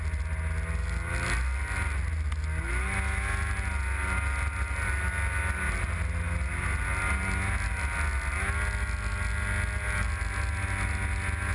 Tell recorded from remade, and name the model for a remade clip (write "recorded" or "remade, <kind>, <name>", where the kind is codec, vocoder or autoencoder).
recorded